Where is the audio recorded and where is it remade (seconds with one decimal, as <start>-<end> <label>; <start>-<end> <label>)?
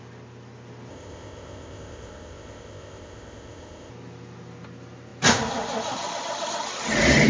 0.0-0.9 recorded; 0.9-3.9 remade; 3.9-7.3 recorded